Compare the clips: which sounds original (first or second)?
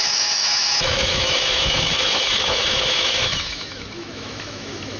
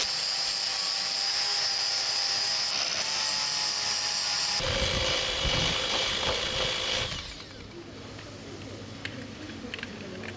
second